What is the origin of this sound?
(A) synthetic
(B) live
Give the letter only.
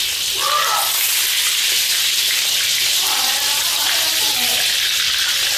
B